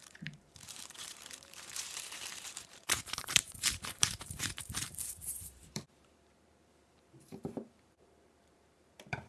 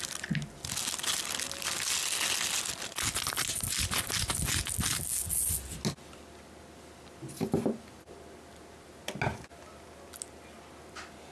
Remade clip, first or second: first